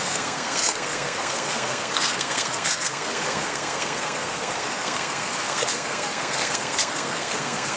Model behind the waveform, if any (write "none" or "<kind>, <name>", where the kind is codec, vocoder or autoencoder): codec, SNAC